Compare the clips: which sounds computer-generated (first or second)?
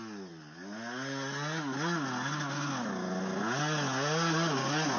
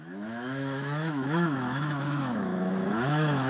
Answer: second